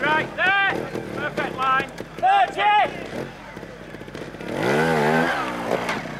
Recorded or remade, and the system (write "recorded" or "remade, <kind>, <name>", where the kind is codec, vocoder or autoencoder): recorded